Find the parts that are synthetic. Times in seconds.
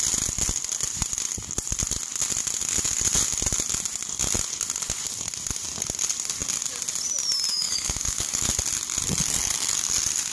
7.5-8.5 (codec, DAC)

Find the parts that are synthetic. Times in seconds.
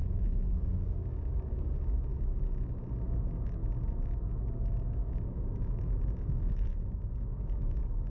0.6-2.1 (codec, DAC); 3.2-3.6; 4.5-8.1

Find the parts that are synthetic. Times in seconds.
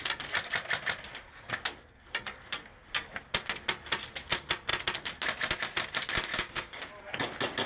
6.3-6.9 (codec, DAC)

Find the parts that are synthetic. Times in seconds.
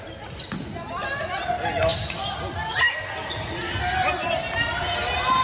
none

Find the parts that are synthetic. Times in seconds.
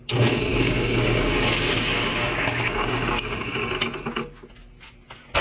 0.5-3.7 (codec, DAC)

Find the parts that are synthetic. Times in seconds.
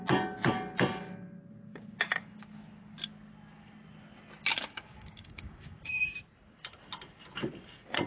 4.5-6.2 (codec, DAC)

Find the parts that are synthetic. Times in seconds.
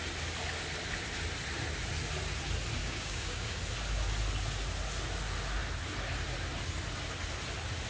2.8-3.6 (codec, DAC)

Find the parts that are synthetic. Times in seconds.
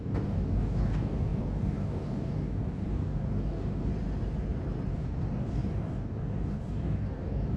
0.0-3.9 (codec, DAC); 4.9-7.6